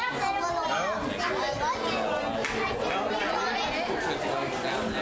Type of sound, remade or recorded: recorded